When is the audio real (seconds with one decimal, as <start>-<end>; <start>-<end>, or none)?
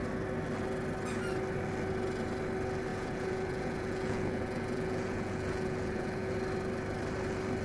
0.0-2.9; 6.3-7.6